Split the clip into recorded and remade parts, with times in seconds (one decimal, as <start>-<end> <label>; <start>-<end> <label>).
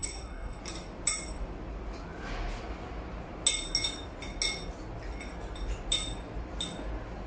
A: 0.0-0.6 remade; 0.6-7.3 recorded